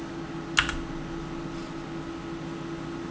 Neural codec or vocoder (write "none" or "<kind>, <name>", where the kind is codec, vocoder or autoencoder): none